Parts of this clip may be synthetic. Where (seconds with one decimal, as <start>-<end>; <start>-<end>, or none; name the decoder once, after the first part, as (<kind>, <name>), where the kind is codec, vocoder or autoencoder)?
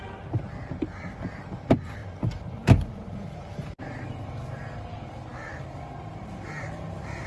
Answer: 0.0-2.0 (vocoder, BigVGAN v2); 3.8-7.3